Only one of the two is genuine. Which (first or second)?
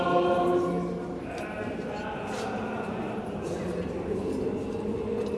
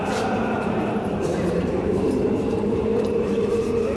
first